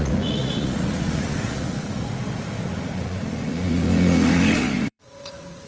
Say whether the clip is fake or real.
fake